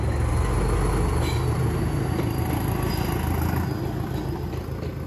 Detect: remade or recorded recorded